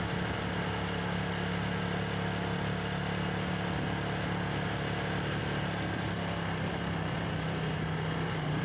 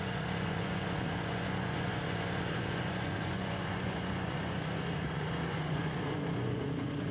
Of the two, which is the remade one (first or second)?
second